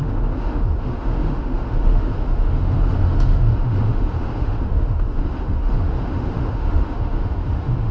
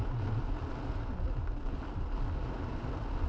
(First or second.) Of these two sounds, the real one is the second